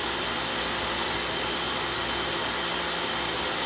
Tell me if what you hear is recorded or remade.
recorded